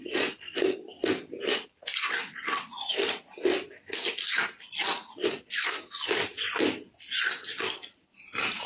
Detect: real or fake real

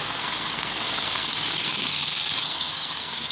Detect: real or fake fake